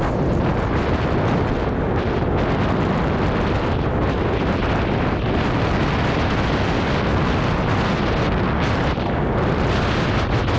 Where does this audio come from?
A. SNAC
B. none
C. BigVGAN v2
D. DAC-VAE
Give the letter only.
B